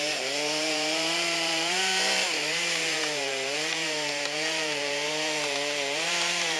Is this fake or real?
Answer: fake